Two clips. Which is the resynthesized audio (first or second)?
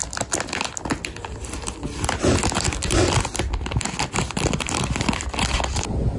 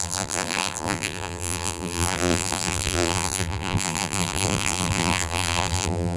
second